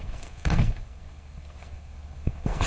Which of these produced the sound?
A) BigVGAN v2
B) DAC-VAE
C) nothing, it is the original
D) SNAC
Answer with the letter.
D